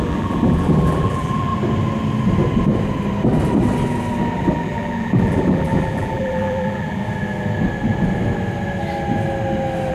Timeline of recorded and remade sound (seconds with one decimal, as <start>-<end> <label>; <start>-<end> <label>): 0.0-1.5 remade; 1.5-4.3 recorded; 4.3-7.0 remade; 7.0-9.9 recorded